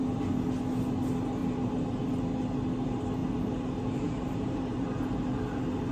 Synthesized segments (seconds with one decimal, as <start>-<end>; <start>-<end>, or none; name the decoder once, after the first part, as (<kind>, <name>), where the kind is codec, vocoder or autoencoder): 1.4-2.0 (vocoder, BigVGAN v2); 3.2-5.0